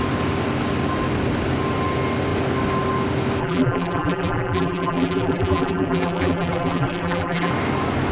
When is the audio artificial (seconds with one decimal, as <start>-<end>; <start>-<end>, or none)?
3.4-7.5